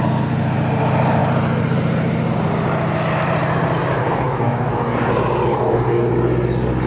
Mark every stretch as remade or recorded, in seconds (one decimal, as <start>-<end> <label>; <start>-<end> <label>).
0.0-4.0 recorded; 4.0-5.1 remade; 5.1-5.5 recorded; 5.5-6.1 remade; 6.1-6.9 recorded